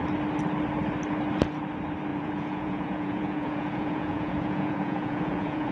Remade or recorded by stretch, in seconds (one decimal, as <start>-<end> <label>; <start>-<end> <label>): 0.0-2.1 recorded; 2.1-5.7 remade